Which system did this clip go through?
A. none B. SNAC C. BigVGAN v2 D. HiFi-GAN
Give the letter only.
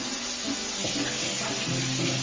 A